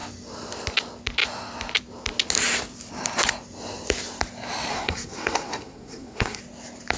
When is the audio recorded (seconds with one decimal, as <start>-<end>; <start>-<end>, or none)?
0.0-4.7; 6.4-7.0